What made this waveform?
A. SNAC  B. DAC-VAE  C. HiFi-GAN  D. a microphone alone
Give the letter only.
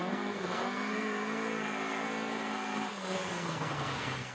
A